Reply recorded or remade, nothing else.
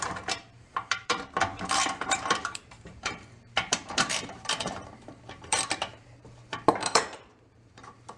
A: remade